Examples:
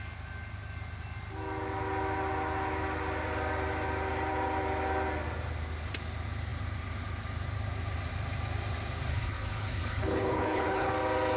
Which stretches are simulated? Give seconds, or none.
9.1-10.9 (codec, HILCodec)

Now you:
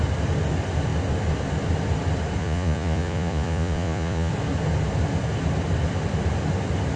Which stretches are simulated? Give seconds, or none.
2.4-4.3 (vocoder, Vocos)

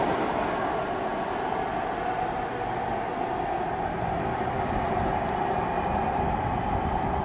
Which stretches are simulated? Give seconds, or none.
none

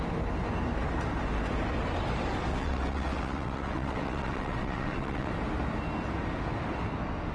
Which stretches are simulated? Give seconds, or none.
2.5-5.3 (vocoder, WaveNeXt)

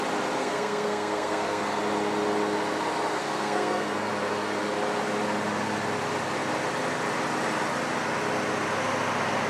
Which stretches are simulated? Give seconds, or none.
0.4-1.8 (codec, SNAC); 3.2-4.1